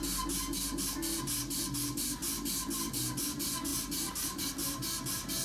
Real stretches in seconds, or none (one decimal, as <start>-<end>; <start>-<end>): 0.0-5.4